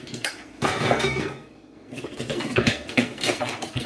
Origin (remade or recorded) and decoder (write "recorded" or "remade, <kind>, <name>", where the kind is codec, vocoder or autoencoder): remade, codec, SNAC